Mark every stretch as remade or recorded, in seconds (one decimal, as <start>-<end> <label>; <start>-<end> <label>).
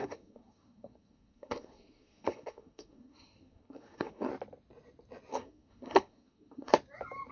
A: 0.0-4.3 remade; 4.3-5.3 recorded; 5.3-6.7 remade; 6.7-7.3 recorded